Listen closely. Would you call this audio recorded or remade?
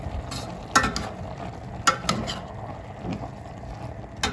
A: recorded